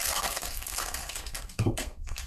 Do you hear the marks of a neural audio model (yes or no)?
yes